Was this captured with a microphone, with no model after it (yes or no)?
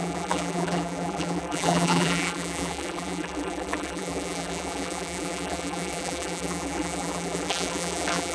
no